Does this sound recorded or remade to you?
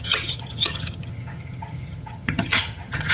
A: remade